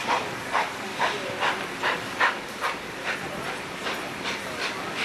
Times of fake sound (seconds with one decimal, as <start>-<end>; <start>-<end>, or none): 0.0-0.9; 2.0-3.0; 4.4-5.0